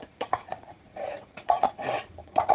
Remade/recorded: remade